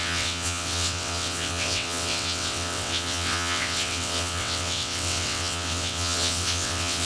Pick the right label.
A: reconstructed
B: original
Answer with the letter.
A